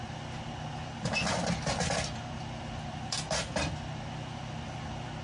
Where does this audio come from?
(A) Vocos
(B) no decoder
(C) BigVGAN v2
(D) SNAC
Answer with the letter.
B